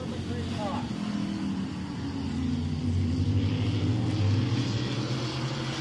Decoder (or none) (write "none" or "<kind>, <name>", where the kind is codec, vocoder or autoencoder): none